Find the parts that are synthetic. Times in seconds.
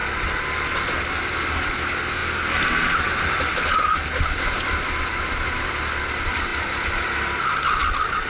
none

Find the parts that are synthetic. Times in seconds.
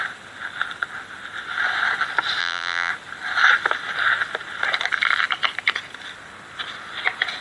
2.4-2.9 (vocoder, BigVGAN v2)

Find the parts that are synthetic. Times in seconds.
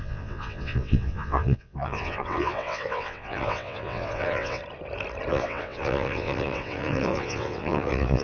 0.0-4.6 (vocoder, WaveNeXt); 5.3-8.2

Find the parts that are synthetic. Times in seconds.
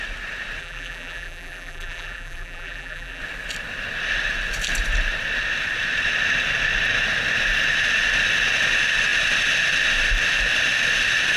0.6-3.2 (vocoder, BigVGAN v2)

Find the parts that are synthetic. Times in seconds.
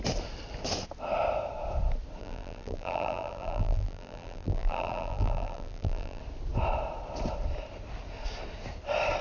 2.2-6.2 (vocoder, BigVGAN v2)